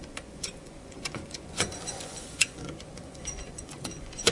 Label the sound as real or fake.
fake